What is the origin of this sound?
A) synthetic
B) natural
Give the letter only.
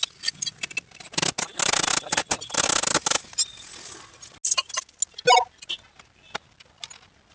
B